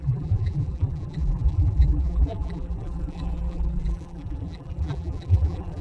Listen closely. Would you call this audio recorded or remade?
remade